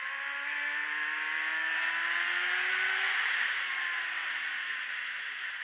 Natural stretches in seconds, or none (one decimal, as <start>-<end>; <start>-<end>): 0.0-5.6